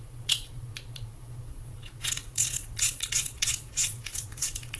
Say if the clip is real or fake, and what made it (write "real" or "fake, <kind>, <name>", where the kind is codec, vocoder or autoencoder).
fake, vocoder, Vocos